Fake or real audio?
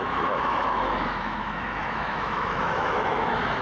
fake